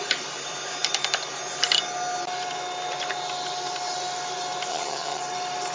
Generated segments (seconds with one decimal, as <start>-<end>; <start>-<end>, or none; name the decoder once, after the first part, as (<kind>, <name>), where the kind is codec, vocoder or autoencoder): 4.7-5.2 (vocoder, HiFi-GAN)